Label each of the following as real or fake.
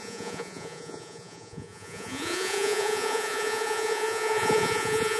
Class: fake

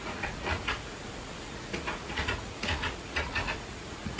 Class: fake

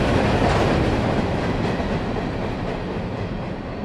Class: real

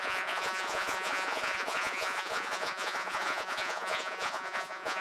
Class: fake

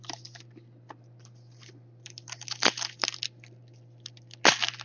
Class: real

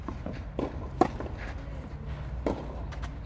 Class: real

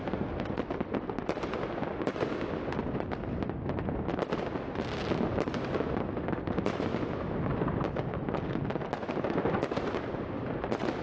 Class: real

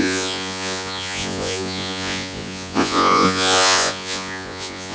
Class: fake